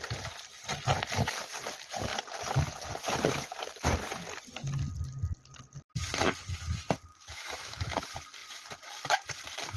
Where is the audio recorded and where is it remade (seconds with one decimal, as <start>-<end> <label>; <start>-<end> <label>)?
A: 0.0-7.1 recorded; 7.1-8.0 remade; 8.0-9.8 recorded